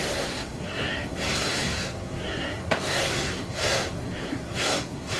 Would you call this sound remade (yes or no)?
yes